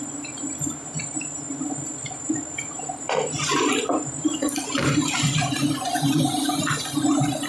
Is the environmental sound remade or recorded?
remade